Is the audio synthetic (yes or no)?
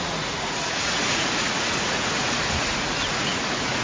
yes